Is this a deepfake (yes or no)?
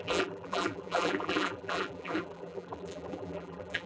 yes